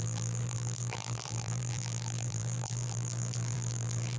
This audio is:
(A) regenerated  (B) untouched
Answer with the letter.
A